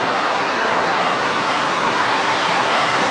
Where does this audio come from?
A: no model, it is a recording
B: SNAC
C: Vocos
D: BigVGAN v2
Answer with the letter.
B